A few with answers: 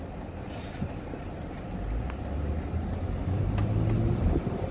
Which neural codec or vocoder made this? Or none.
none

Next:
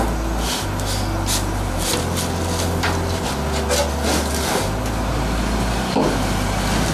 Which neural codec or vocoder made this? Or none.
none